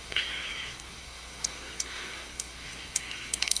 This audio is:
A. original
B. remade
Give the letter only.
B